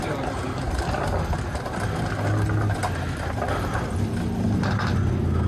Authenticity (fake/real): real